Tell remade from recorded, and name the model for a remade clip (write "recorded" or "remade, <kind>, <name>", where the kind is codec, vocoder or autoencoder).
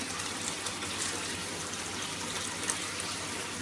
recorded